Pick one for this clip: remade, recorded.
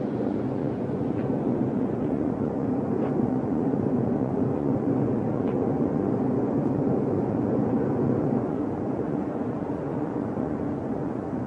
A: remade